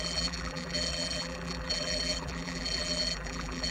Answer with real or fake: fake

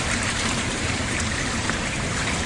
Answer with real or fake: fake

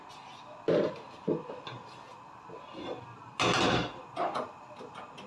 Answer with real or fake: real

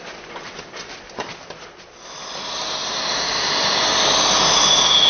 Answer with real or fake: fake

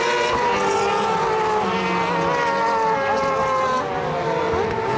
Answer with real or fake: real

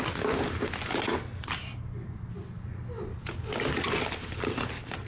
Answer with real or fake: real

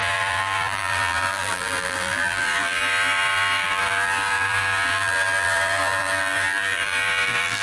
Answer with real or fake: fake